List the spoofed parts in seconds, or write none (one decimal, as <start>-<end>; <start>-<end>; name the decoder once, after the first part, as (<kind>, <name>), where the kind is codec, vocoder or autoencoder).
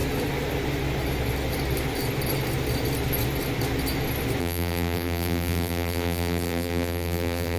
4.4-7.6 (vocoder, BigVGAN v2)